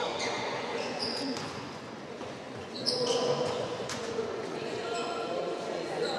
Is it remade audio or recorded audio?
remade